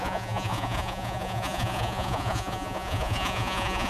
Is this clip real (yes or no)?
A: no